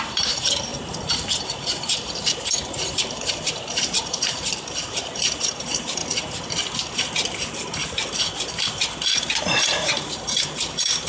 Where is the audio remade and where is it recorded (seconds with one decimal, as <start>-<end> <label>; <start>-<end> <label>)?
0.0-0.7 remade; 0.7-2.7 recorded; 2.7-6.0 remade; 6.0-9.6 recorded; 9.6-11.1 remade